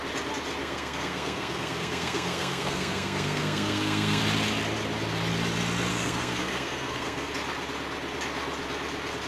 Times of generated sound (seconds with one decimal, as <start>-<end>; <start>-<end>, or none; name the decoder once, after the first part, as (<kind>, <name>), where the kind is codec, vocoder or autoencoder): 0.6-4.2 (codec, SNAC); 5.9-7.3